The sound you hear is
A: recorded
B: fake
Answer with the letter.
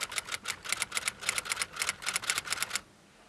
A